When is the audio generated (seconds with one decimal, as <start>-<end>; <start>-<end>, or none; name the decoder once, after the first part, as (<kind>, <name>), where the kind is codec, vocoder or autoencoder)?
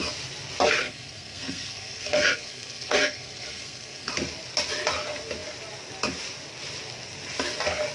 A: 0.8-4.1 (codec, SNAC)